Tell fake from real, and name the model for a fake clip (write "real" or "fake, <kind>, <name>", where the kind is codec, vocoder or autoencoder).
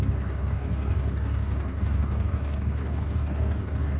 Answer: fake, codec, DAC